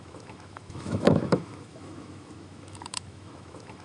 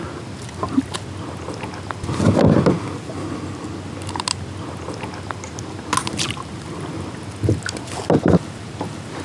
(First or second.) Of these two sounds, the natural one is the second